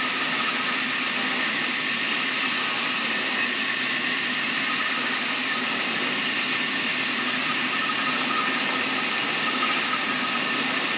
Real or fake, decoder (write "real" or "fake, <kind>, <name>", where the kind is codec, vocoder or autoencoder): real